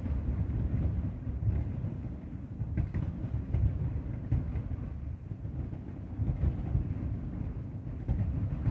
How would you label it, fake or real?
real